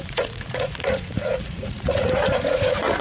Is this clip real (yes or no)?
no